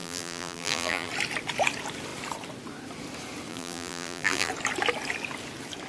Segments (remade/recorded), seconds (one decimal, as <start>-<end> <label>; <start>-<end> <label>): 0.0-1.1 remade; 1.1-3.5 recorded; 3.5-4.5 remade; 4.5-5.9 recorded